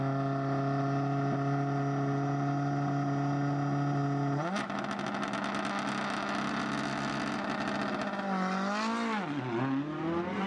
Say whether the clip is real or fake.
real